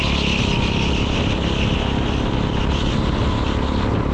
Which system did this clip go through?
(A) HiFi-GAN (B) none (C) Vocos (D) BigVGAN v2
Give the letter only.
B